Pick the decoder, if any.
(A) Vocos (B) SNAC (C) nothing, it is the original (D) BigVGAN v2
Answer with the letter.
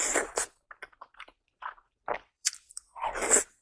D